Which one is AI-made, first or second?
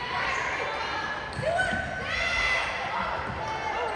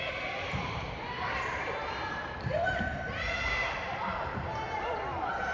second